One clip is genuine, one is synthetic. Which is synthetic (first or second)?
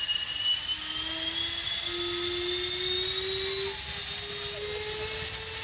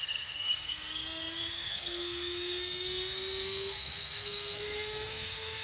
second